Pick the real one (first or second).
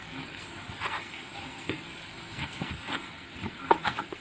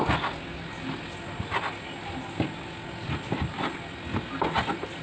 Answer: second